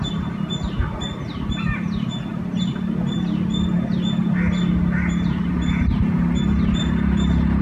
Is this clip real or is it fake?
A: real